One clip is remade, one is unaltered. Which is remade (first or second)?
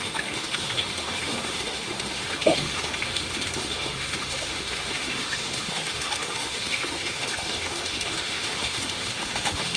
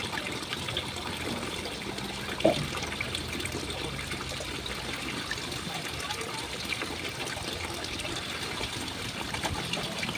first